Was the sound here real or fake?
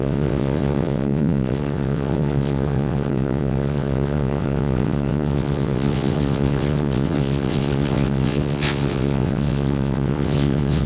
fake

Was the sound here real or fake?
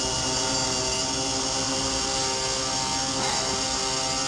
real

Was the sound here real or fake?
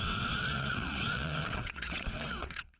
fake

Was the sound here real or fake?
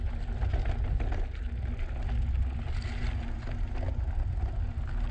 real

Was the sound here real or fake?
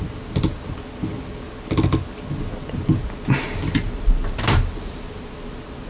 real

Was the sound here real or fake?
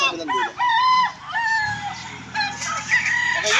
real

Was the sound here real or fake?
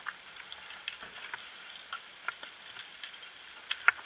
real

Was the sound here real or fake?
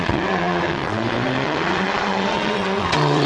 fake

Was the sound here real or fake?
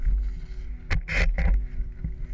real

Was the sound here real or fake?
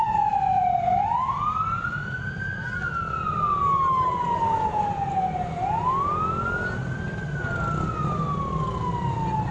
real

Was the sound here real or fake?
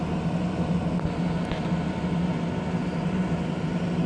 real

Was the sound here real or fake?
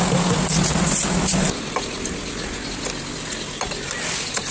real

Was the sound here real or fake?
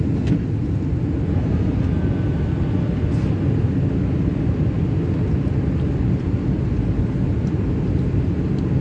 real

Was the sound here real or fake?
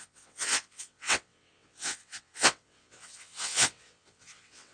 fake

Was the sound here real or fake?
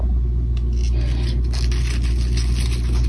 real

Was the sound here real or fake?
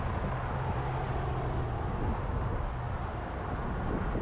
real